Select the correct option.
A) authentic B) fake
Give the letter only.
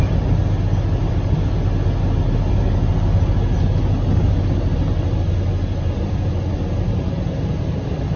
A